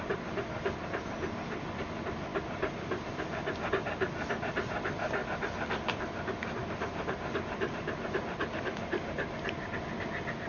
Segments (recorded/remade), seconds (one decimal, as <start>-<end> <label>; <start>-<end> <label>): 0.0-10.5 recorded